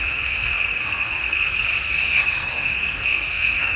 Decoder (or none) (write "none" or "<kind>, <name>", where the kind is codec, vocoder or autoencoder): codec, SNAC